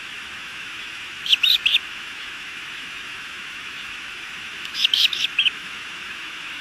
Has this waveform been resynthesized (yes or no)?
yes